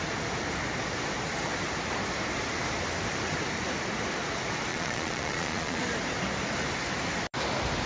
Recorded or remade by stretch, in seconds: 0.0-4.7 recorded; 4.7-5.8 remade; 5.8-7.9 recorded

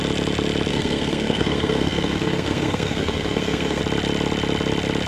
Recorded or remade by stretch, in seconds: 0.0-0.7 recorded; 0.7-3.8 remade; 3.8-5.1 recorded